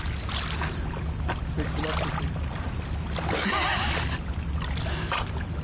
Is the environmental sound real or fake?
real